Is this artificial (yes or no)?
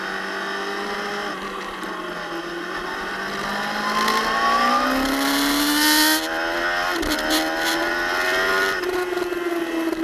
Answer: no